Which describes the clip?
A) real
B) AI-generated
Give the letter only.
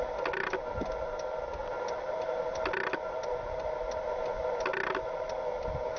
A